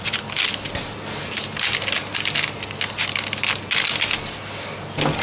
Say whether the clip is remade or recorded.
recorded